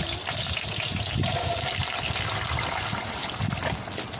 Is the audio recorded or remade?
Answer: recorded